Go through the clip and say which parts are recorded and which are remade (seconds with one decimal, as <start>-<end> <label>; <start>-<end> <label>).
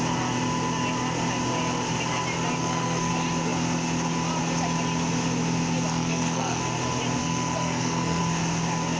0.0-2.6 recorded; 2.6-3.1 remade; 3.1-5.9 recorded; 5.9-6.6 remade; 6.6-7.2 recorded; 7.2-8.2 remade; 8.2-9.0 recorded